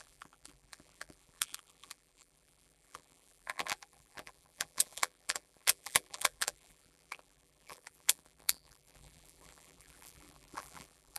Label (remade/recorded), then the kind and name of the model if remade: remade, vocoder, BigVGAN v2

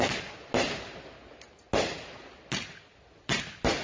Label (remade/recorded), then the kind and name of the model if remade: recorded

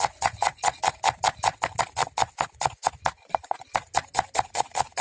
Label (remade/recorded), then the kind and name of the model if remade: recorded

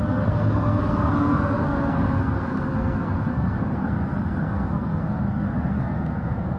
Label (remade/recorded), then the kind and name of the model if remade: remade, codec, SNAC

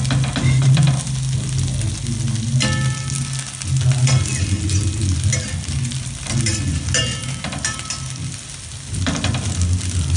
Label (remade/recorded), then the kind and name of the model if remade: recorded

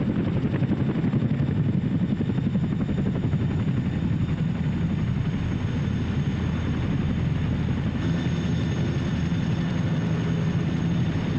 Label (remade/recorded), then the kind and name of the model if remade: recorded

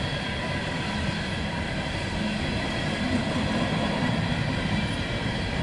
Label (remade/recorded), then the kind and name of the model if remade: recorded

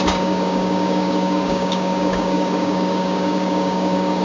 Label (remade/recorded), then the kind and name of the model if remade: remade, codec, DAC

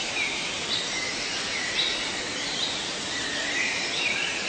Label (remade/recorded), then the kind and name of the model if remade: remade, vocoder, BigVGAN v2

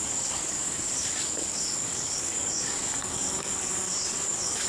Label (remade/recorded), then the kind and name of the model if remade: remade, codec, DAC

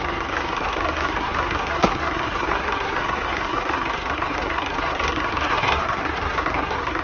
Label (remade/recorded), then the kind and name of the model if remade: remade, codec, SNAC